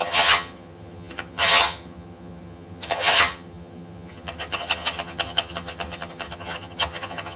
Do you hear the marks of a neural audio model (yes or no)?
yes